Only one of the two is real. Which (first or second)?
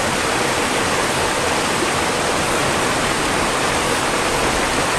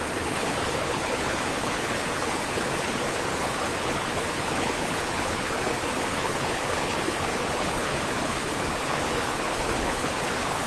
first